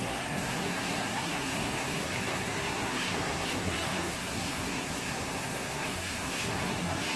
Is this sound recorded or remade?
remade